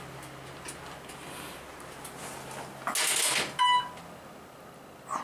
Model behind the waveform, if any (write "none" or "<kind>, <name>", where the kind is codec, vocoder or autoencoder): none